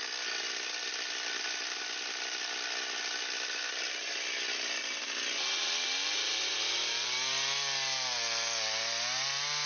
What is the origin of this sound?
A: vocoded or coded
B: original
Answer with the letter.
B